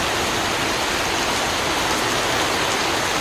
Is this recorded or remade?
recorded